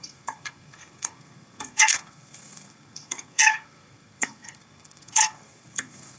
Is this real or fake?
fake